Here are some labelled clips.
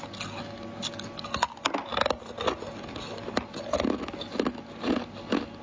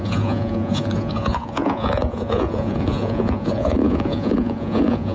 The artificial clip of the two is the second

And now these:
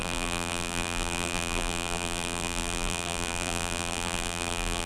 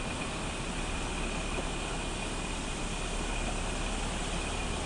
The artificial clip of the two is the first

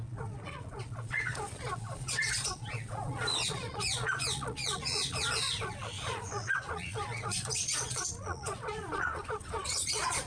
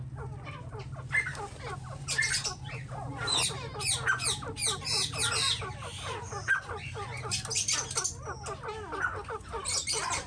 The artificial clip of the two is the first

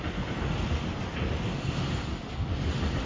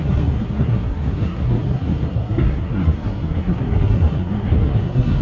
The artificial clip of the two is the second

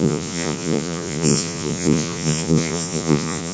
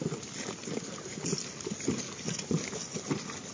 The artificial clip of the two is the first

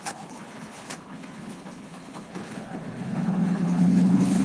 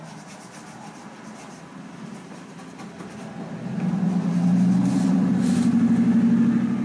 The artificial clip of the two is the first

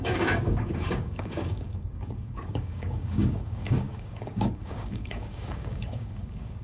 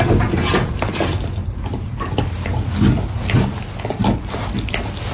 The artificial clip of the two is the first